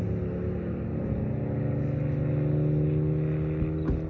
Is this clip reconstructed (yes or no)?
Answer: no